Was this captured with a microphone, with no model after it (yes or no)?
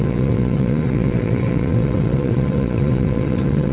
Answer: no